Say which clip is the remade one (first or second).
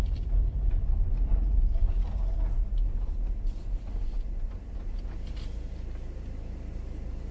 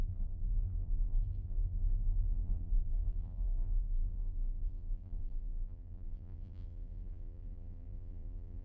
second